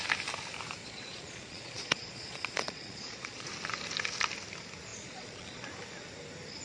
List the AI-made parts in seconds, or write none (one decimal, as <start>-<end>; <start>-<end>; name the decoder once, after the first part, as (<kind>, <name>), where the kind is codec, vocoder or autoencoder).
0.8-3.5 (vocoder, Vocos); 4.9-5.7